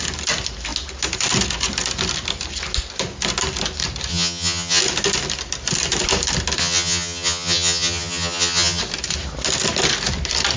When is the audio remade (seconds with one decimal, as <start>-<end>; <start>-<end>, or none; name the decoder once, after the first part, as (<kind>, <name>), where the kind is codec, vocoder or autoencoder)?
4.1-4.8 (vocoder, HiFi-GAN); 6.6-8.8